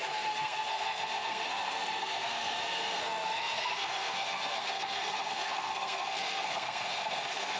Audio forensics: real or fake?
fake